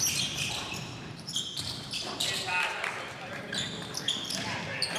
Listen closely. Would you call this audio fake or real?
fake